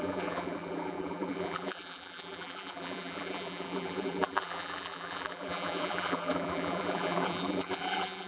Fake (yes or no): yes